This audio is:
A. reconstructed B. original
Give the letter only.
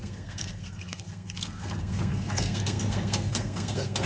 A